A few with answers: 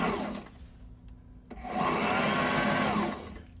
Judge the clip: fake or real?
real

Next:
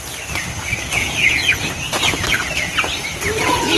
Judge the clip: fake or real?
real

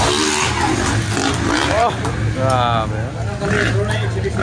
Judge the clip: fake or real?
real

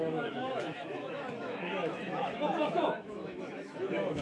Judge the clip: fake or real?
fake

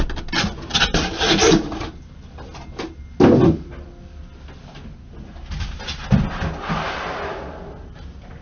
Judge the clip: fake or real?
real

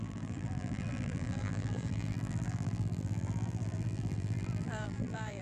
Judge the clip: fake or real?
fake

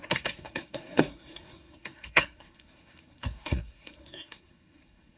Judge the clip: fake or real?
fake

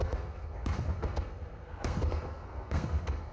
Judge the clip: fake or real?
fake